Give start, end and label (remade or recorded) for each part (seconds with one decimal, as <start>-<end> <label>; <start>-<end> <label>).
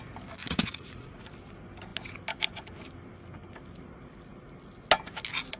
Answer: 0.0-0.4 recorded; 0.4-1.3 remade; 1.3-5.6 recorded